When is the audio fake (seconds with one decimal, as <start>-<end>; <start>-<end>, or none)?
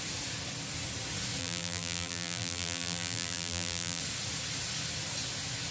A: 1.4-4.0